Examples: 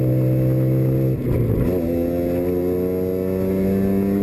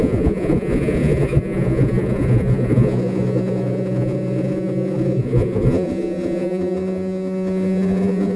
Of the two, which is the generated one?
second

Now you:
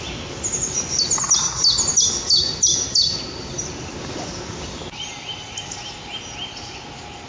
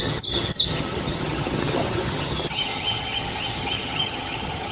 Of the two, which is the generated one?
second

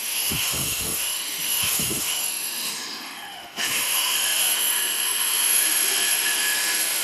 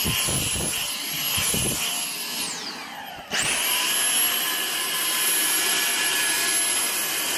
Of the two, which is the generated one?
first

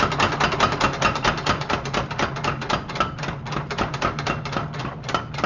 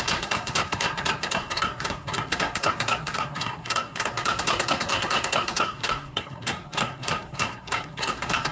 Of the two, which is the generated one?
second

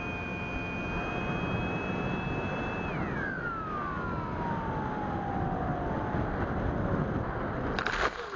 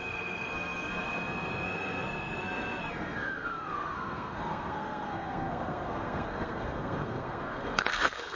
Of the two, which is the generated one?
second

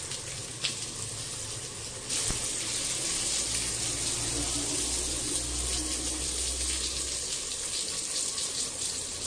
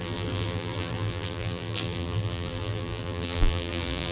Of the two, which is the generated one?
second